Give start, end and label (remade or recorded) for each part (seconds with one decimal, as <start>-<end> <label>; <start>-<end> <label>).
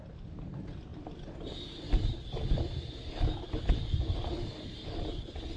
0.0-0.9 recorded; 0.9-3.1 remade; 3.1-5.6 recorded